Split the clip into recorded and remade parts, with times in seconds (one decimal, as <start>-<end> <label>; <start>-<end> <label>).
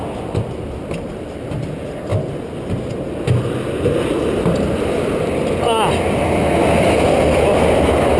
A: 0.0-8.2 recorded